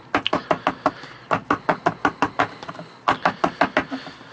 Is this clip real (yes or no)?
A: yes